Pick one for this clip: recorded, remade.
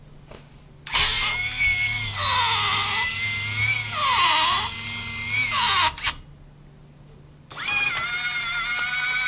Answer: recorded